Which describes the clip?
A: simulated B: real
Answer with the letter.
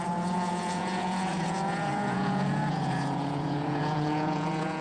A